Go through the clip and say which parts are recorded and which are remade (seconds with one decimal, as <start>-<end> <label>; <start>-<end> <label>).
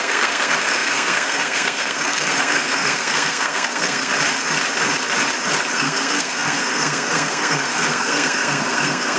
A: 0.0-4.1 remade; 4.1-5.7 recorded; 5.7-9.2 remade